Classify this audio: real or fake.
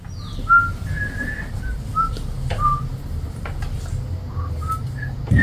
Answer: real